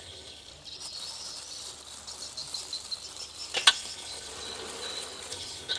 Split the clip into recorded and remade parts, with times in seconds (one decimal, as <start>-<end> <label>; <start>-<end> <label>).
0.0-0.5 remade; 0.5-3.7 recorded; 3.7-4.3 remade; 4.3-5.3 recorded; 5.3-5.8 remade